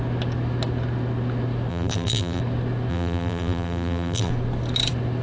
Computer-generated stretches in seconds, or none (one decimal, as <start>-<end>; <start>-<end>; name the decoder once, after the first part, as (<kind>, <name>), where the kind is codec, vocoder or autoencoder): 1.7-2.4 (vocoder, BigVGAN v2); 2.9-4.3